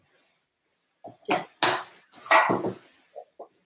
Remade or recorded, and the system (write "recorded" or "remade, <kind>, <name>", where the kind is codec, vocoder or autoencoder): recorded